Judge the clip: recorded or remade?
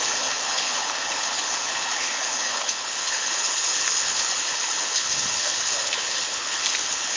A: remade